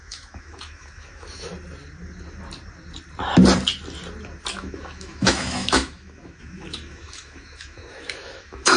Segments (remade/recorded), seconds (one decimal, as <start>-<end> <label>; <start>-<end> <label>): 0.0-1.5 remade; 1.5-4.5 recorded; 4.5-8.8 remade